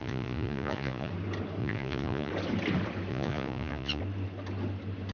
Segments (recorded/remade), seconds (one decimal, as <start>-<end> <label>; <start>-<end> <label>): 0.0-1.1 remade; 1.1-1.6 recorded; 1.6-2.3 remade; 2.3-3.1 recorded; 3.1-4.0 remade; 4.0-5.1 recorded